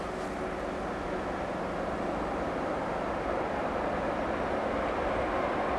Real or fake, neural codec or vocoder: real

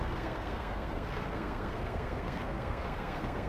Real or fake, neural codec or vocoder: fake, codec, SNAC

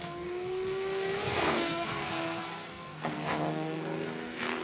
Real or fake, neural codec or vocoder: fake, codec, SNAC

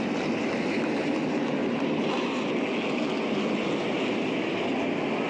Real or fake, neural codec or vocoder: real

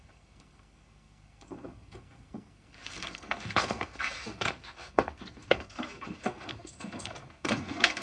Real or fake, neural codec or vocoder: fake, codec, SNAC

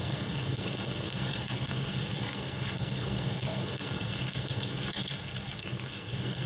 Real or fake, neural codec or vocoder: fake, codec, SNAC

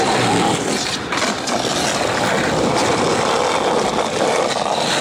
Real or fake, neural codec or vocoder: real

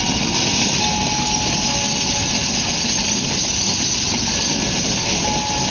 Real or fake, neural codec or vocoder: real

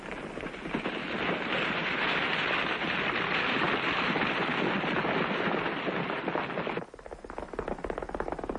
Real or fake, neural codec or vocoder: real